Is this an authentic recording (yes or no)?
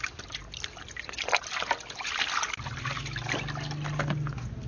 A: yes